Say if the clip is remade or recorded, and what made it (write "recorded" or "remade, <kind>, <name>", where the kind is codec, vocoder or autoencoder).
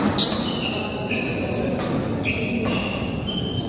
recorded